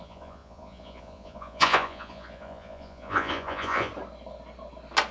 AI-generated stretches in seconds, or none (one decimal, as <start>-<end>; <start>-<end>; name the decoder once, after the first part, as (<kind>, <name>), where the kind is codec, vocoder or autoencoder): 0.0-3.9 (vocoder, Vocos)